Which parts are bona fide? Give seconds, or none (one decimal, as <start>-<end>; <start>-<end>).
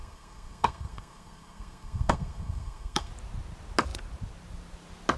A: 3.1-5.2